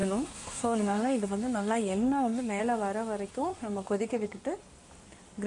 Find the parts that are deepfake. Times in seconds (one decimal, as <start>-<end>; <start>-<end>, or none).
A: 0.0-2.6; 3.3-4.4

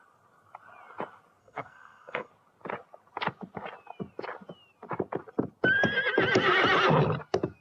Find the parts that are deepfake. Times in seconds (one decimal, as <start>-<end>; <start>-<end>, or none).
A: 1.4-2.3

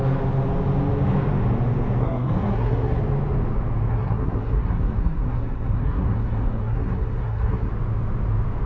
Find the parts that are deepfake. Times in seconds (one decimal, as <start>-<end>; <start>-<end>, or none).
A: 2.0-3.0; 3.9-7.7

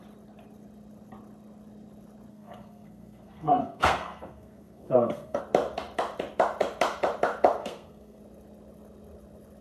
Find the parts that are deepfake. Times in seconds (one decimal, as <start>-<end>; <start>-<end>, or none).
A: 2.3-5.4; 7.6-8.2

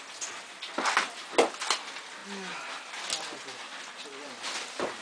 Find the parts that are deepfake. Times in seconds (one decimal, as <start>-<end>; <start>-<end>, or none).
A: none

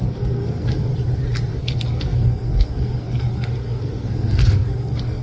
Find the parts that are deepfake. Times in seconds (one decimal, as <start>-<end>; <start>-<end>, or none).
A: 0.0-0.9; 1.5-5.2

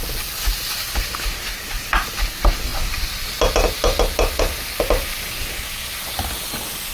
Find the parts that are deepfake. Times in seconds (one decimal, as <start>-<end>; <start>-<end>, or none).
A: none

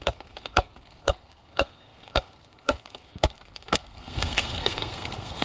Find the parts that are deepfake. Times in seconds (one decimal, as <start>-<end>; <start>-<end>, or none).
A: 0.0-5.4